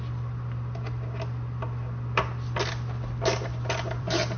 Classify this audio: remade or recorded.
recorded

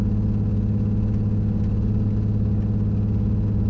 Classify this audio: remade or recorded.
recorded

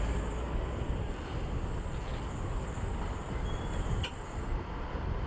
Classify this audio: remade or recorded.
recorded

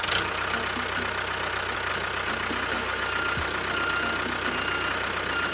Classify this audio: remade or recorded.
recorded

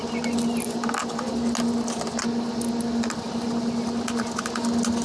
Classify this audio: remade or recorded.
recorded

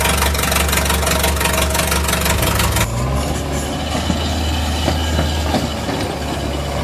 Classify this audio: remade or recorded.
recorded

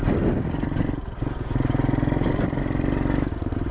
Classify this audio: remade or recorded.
recorded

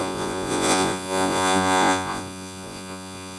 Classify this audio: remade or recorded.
remade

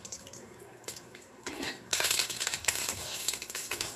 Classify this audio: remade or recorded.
remade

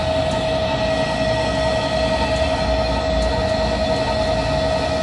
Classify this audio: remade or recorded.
recorded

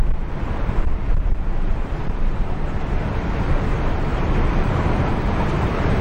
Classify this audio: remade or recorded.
remade